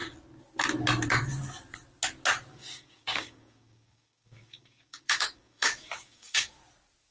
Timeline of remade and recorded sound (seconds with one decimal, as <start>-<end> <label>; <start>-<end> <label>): 0.0-2.5 recorded; 2.5-6.5 remade; 6.5-7.1 recorded